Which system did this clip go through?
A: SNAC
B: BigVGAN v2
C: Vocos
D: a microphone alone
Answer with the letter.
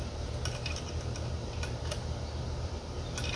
D